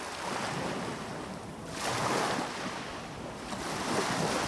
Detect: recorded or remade recorded